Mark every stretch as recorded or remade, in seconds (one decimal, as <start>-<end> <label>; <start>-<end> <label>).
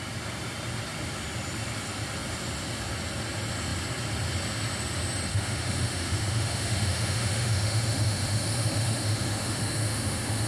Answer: 0.0-5.3 recorded; 5.3-10.5 remade